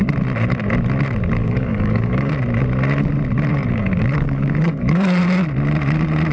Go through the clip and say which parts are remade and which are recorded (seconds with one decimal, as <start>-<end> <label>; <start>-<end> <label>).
0.0-1.4 recorded; 1.4-2.3 remade; 2.3-3.5 recorded; 3.5-5.2 remade; 5.2-6.3 recorded